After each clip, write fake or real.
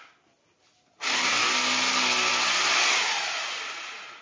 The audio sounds real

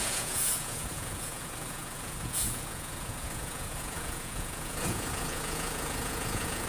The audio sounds fake